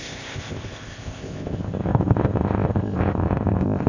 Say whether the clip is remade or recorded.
remade